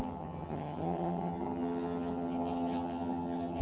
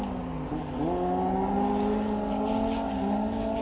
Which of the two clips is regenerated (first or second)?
first